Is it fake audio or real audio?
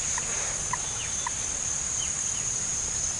real